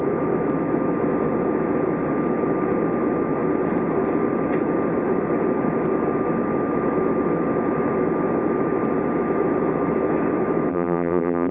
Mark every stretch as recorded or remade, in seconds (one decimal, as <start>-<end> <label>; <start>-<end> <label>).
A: 0.0-10.7 recorded; 10.7-11.5 remade